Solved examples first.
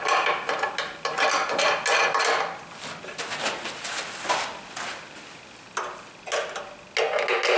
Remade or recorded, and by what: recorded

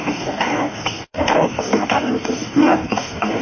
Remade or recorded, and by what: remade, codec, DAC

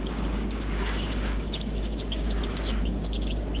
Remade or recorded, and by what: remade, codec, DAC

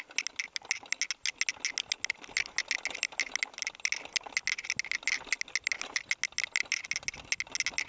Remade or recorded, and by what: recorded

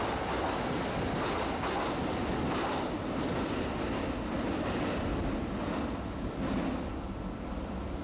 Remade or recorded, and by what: recorded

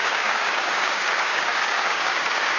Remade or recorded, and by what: remade, codec, DAC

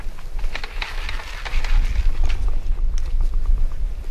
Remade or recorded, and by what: recorded